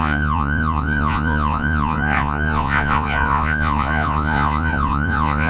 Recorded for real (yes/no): no